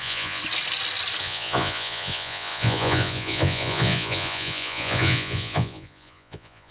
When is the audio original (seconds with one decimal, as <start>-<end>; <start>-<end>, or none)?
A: 0.4-1.2